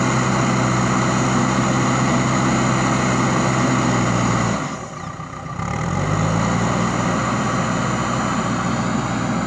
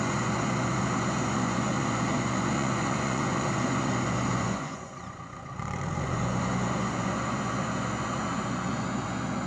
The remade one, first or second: second